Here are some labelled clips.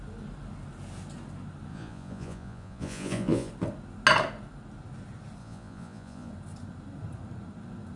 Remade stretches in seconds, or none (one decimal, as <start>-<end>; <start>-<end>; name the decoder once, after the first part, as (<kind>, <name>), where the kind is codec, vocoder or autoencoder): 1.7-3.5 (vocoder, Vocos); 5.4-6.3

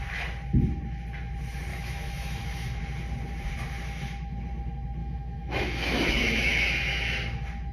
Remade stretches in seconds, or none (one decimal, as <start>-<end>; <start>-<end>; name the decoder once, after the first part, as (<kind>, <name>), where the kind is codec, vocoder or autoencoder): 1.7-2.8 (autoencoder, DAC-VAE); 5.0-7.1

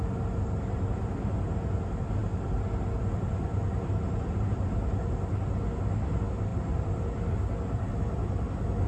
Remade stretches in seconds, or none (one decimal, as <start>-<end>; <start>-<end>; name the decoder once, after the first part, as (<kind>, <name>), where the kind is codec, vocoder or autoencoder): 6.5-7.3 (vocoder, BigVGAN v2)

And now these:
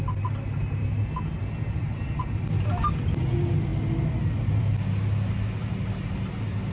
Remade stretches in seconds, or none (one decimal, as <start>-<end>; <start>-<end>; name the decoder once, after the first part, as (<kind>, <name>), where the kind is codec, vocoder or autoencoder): none

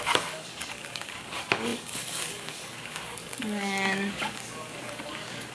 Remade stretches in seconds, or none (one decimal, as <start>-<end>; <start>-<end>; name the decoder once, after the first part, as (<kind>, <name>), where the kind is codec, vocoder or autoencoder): 0.0-5.5 (codec, DAC)

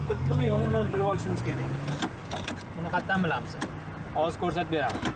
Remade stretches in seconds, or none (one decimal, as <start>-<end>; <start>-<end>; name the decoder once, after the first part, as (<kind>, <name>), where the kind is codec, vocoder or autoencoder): 0.0-1.4 (codec, SNAC)